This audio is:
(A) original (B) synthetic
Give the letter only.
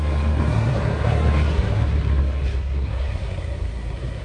B